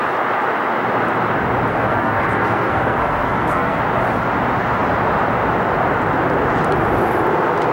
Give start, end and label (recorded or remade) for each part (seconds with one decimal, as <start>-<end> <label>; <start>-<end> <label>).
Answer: 0.0-1.7 recorded; 1.7-3.8 remade; 3.8-7.7 recorded